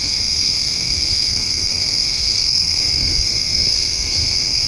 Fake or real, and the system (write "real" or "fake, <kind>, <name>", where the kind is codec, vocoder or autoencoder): fake, codec, SNAC